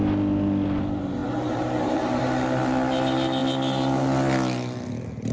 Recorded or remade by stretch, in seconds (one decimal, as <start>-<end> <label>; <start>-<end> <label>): 0.0-1.2 recorded; 1.2-2.2 remade; 2.2-5.3 recorded